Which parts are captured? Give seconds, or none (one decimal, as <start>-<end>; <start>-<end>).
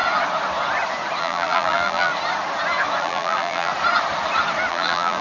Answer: 0.0-1.2; 2.1-3.0; 3.7-4.7